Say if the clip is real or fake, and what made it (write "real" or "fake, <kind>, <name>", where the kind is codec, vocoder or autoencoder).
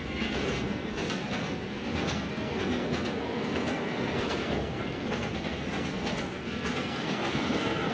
fake, codec, SNAC